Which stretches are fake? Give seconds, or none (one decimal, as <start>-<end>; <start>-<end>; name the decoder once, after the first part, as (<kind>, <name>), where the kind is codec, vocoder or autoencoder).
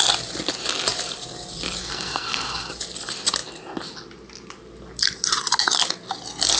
1.8-2.7 (codec, SNAC)